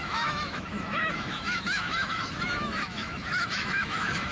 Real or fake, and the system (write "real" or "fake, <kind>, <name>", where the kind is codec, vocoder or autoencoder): fake, autoencoder, DAC-VAE